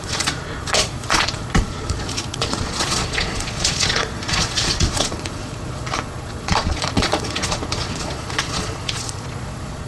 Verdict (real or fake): fake